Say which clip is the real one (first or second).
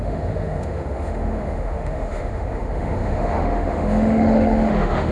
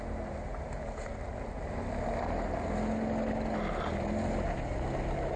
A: second